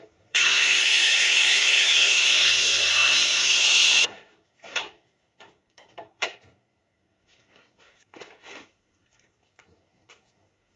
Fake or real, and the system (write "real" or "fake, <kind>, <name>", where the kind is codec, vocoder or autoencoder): fake, codec, SNAC